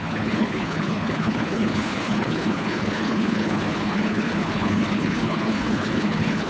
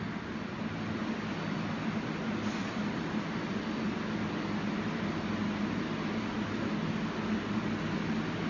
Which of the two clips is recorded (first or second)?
second